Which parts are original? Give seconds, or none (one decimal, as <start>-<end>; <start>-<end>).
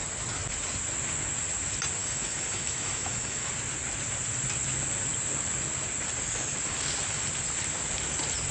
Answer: 0.0-2.0; 3.5-8.5